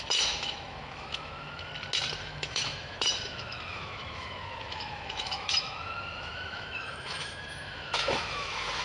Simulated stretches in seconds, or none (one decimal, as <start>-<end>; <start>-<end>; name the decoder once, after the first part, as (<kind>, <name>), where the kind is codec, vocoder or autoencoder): 0.0-1.7 (autoencoder, DAC-VAE); 2.2-8.8